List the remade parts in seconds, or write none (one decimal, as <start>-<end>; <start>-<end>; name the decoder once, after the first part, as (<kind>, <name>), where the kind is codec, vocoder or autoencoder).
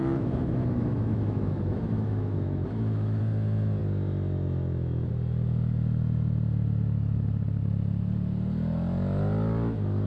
0.0-3.2 (autoencoder, DAC-VAE)